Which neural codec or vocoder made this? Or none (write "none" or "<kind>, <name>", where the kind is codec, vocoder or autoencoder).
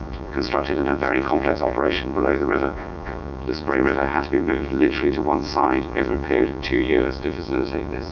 vocoder, Vocos